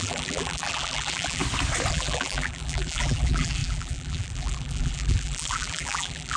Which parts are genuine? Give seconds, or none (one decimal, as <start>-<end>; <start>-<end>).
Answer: 1.4-1.9